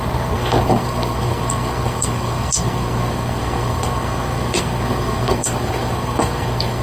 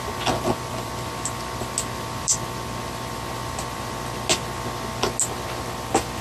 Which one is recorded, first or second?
second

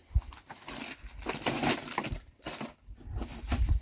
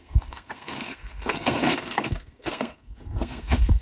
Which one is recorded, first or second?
first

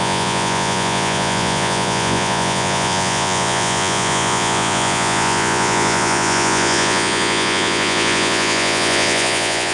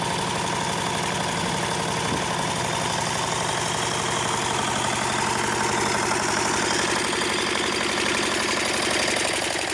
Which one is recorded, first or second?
second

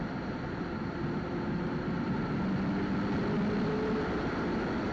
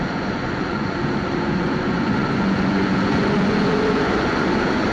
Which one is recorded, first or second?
first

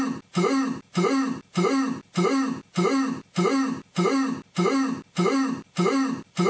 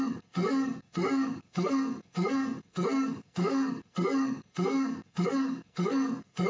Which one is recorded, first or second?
first